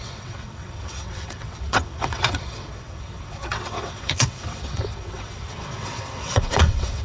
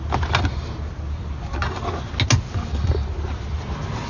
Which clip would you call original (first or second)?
second